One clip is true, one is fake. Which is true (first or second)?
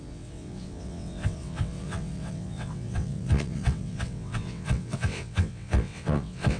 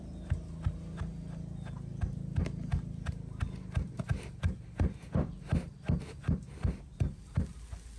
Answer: second